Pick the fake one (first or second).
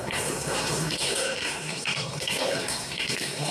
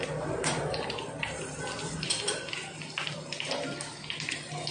first